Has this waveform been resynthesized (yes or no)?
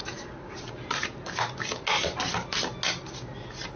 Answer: no